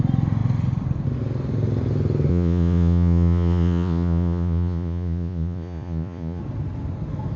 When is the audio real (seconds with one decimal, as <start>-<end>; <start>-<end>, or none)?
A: 0.0-2.3; 6.4-7.4